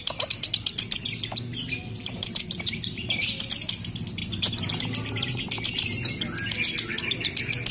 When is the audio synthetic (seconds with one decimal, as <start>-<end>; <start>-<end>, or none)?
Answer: 1.8-3.5